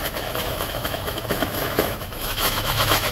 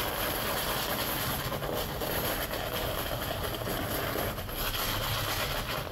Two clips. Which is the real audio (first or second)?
second